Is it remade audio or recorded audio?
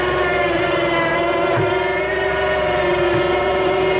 recorded